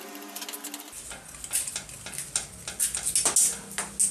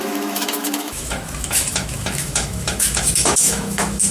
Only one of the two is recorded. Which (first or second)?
first